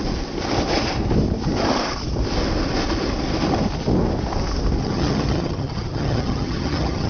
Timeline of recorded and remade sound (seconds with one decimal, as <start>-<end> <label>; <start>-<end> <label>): 0.0-4.8 recorded; 4.8-7.1 remade